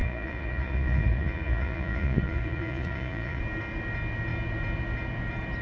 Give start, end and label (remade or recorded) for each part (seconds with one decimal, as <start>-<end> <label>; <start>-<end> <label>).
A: 0.0-3.4 remade; 3.4-5.6 recorded